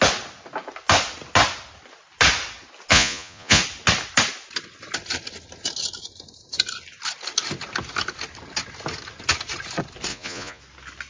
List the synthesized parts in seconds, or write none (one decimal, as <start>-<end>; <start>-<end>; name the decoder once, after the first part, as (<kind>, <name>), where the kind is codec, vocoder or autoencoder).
2.9-3.6 (vocoder, Vocos); 10.1-10.6